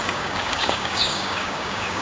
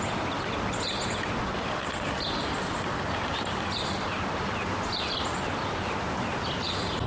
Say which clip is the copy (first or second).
first